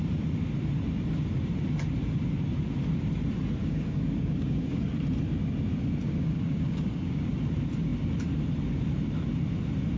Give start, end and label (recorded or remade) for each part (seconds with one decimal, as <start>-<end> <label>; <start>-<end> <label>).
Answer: 0.0-3.6 recorded; 3.6-4.9 remade; 4.9-6.0 recorded; 6.0-7.3 remade; 7.3-10.0 recorded